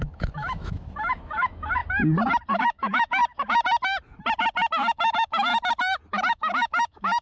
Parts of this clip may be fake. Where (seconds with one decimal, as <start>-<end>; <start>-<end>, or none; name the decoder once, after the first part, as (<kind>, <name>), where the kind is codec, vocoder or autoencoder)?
0.0-1.8 (autoencoder, DAC-VAE); 2.5-3.2; 4.7-5.5; 6.1-7.2